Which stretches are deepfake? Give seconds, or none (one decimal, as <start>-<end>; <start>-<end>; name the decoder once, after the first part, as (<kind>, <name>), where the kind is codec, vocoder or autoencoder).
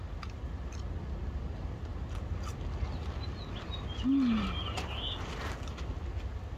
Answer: none